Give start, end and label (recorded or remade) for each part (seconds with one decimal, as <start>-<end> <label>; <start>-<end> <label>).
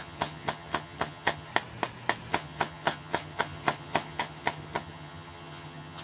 0.0-1.5 remade; 1.5-2.3 recorded; 2.3-6.0 remade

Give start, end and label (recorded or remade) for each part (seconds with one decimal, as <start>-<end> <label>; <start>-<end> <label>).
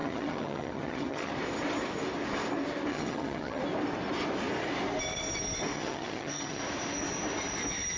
0.0-1.3 remade; 1.3-2.9 recorded; 2.9-3.6 remade; 3.6-5.7 recorded; 5.7-6.6 remade; 6.6-8.0 recorded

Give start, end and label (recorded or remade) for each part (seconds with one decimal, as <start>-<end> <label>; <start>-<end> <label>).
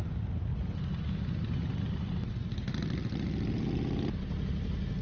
0.0-5.0 recorded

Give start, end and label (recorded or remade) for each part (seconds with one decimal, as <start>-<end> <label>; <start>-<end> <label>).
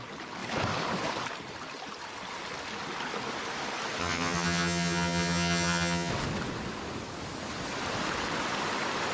0.0-4.0 recorded; 4.0-6.1 remade; 6.1-9.1 recorded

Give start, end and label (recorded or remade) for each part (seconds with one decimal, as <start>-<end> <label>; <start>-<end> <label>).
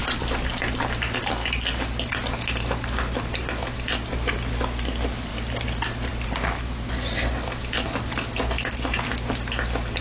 0.0-10.0 recorded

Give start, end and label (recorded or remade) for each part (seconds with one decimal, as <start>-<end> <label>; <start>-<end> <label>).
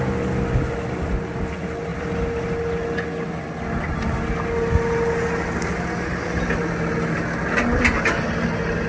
0.0-8.9 recorded